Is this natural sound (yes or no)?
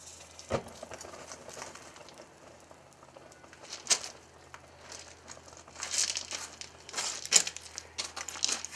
yes